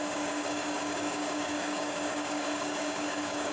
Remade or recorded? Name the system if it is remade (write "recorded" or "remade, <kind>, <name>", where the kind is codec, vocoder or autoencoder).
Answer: remade, codec, DAC